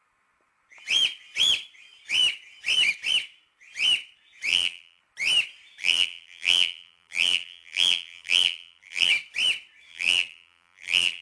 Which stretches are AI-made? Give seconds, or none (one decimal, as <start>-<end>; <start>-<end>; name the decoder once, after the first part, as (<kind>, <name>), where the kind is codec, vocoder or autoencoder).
4.5-5.0 (vocoder, BigVGAN v2); 5.8-9.1; 9.9-11.2